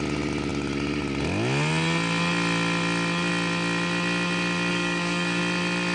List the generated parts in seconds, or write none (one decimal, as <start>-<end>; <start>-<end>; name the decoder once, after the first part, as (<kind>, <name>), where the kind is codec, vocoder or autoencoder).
4.7-5.4 (codec, DAC)